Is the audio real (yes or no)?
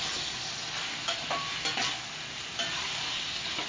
yes